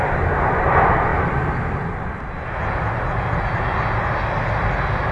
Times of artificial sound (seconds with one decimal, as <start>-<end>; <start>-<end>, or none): none